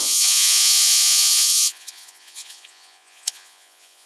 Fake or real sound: fake